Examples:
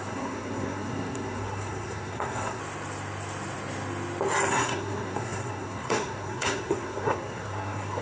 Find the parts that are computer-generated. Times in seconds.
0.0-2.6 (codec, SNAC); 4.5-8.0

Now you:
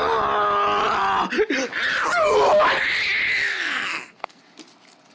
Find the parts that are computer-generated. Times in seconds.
3.5-4.4 (codec, SNAC)

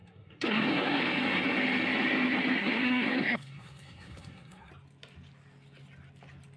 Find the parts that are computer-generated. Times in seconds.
0.0-1.0 (codec, SNAC); 2.6-4.7